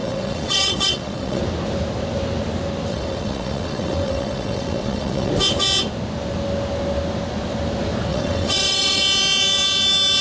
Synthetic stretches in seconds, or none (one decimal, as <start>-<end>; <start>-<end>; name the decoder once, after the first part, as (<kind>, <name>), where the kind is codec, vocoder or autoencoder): 0.0-1.4 (vocoder, WaveNeXt); 2.9-5.3; 8.1-9.0